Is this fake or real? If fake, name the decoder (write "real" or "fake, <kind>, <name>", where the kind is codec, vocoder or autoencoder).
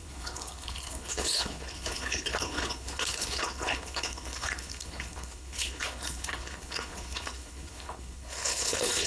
fake, codec, HILCodec